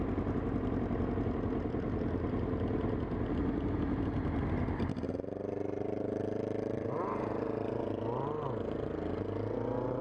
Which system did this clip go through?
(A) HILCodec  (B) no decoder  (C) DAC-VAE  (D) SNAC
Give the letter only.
B